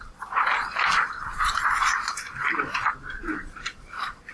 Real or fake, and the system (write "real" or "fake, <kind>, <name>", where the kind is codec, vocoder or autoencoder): fake, vocoder, BigVGAN v2